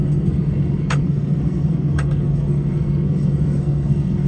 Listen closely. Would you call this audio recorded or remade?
remade